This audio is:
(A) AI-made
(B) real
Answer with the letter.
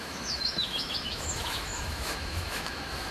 A